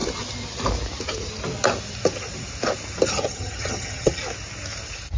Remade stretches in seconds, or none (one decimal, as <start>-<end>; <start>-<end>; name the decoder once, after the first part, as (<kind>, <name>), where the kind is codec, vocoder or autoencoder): 3.1-4.2 (vocoder, HiFi-GAN)